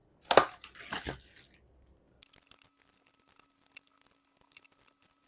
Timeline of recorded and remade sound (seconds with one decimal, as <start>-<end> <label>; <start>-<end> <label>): 0.0-5.3 recorded